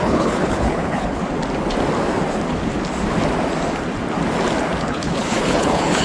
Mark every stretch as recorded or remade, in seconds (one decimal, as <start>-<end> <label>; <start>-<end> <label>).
0.0-1.2 remade; 1.2-4.8 recorded; 4.8-6.0 remade